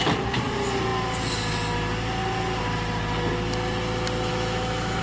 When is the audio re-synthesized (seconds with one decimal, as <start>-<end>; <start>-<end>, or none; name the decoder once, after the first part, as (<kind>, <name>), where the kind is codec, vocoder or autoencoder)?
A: 4.3-5.0 (autoencoder, DAC-VAE)